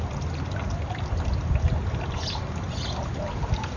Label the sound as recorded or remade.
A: recorded